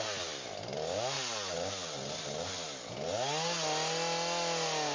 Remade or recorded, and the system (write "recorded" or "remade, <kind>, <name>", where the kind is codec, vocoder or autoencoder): recorded